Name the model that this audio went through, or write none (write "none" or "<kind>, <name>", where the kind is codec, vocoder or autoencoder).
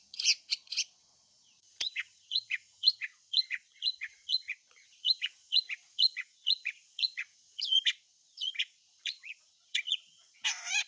vocoder, Vocos